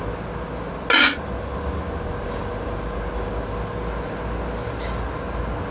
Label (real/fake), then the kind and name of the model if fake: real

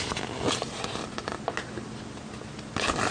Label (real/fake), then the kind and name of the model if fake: real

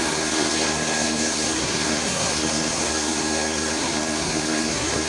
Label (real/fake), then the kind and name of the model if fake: fake, codec, SNAC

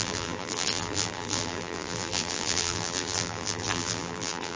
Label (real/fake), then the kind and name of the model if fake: fake, vocoder, BigVGAN v2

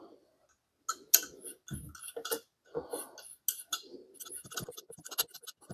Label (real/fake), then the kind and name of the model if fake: real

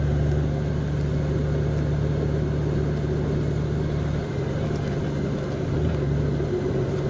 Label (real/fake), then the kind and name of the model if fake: real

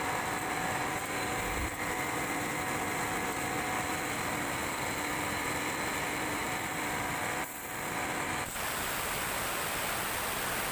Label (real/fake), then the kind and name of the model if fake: real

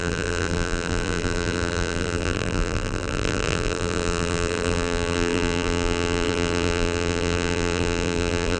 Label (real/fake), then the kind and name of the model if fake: fake, vocoder, BigVGAN v2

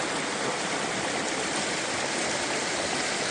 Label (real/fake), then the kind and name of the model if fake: real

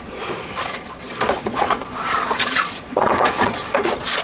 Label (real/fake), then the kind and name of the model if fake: fake, vocoder, Vocos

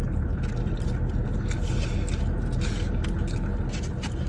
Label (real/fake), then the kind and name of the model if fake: real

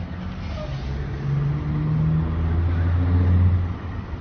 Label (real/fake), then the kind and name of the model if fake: real